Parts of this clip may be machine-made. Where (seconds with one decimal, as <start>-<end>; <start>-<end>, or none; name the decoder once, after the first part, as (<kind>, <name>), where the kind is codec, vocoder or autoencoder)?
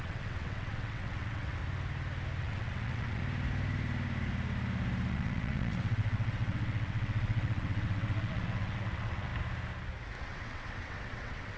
0.0-1.6 (vocoder, WaveNeXt); 2.4-3.2; 5.1-9.3; 10.2-11.6